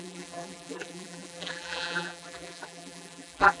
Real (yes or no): no